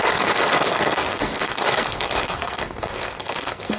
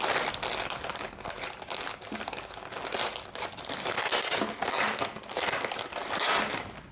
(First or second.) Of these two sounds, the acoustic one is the second